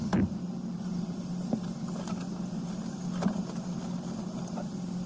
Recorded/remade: recorded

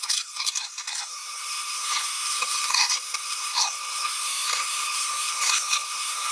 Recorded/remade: remade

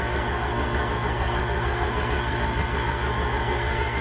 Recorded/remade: remade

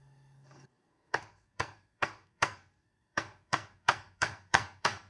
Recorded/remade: remade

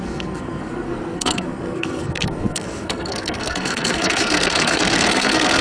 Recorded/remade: remade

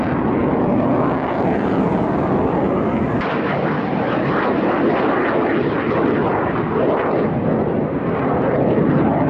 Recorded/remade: recorded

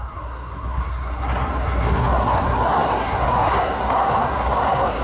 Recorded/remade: remade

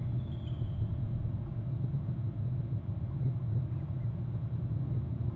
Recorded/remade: recorded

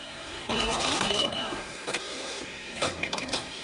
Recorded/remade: remade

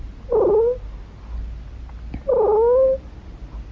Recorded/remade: recorded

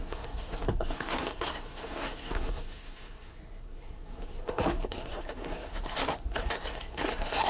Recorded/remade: remade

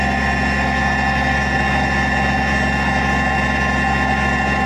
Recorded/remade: recorded